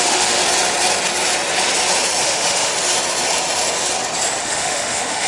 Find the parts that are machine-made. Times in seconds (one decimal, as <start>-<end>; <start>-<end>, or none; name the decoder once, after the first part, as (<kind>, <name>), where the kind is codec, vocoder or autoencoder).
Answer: 0.0-0.4 (autoencoder, DAC-VAE); 2.2-2.7; 4.4-5.3